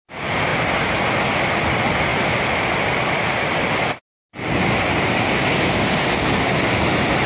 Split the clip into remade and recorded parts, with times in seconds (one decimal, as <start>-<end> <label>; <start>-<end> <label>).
0.0-7.3 recorded